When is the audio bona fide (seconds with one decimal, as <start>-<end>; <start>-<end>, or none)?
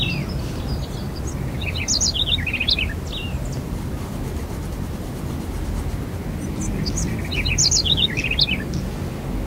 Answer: 0.0-9.5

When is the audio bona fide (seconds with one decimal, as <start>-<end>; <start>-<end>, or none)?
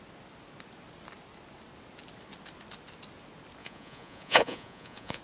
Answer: 0.0-3.6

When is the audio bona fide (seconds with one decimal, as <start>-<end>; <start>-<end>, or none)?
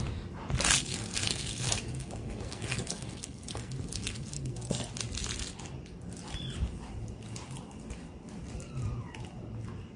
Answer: 0.0-0.8; 4.9-10.0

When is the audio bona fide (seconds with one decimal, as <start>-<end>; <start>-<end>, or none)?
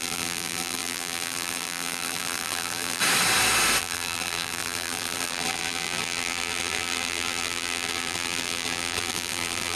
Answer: 3.0-3.8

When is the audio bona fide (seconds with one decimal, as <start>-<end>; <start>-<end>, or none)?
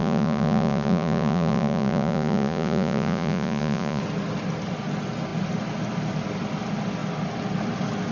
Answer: 4.0-8.1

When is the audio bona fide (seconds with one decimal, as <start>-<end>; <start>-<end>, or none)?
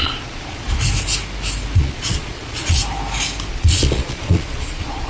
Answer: 0.6-1.8; 2.8-3.5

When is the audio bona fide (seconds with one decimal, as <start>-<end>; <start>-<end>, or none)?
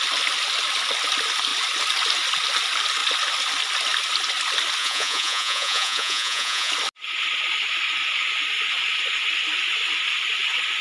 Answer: 0.0-4.8; 6.7-10.8